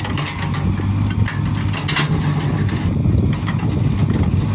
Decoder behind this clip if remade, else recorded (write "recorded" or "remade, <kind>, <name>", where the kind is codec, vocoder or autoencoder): recorded